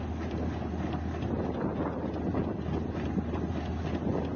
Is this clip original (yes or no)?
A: yes